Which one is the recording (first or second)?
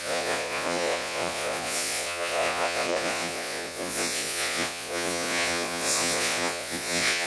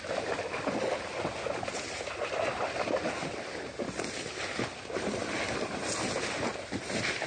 second